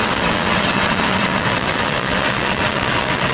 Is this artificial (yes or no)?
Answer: yes